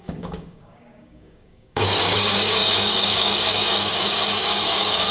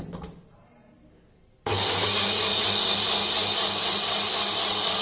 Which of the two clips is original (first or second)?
second